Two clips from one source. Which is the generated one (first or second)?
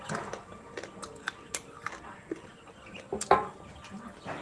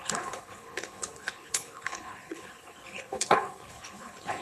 second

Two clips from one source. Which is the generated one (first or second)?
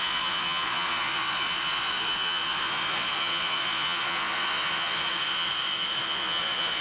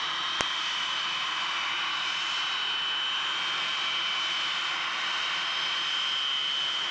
first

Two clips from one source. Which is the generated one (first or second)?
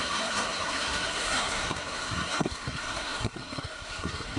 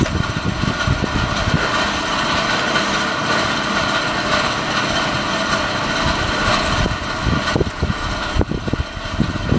first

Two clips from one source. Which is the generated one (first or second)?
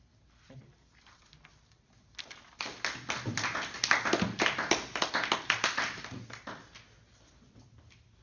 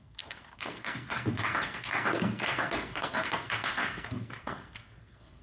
second